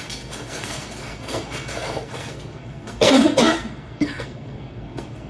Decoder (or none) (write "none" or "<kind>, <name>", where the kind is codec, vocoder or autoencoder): codec, SNAC